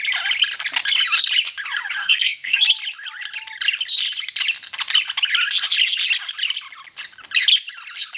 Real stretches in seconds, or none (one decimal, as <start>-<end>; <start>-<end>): 0.0-2.0; 2.6-8.2

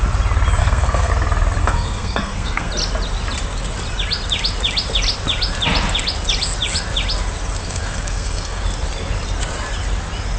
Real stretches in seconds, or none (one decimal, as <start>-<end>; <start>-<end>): 0.0-0.6; 1.1-1.6; 2.7-7.6; 8.6-10.4